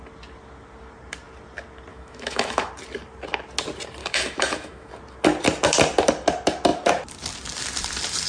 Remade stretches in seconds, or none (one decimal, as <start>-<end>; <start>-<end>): 1.9-2.7; 4.0-4.9